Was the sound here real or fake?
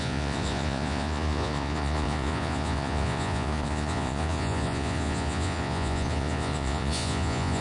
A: fake